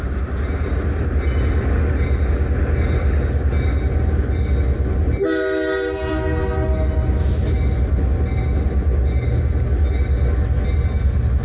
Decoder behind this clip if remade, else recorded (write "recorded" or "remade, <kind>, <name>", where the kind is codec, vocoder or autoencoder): recorded